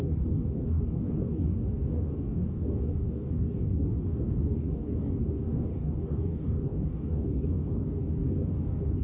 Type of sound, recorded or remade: remade